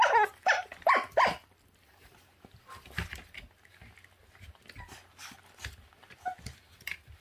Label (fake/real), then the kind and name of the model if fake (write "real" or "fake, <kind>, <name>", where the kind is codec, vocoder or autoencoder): real